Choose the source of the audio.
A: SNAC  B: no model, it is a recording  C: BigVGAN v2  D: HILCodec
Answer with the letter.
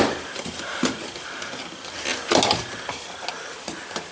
B